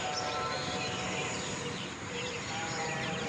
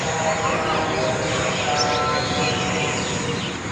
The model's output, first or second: first